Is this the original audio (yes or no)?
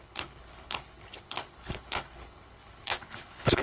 no